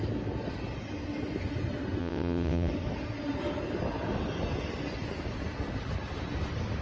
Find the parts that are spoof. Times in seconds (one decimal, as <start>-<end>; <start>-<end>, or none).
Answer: 2.0-2.7